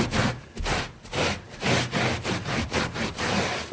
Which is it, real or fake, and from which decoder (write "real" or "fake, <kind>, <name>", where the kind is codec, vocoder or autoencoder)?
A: real